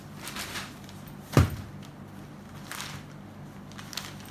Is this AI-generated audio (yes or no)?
no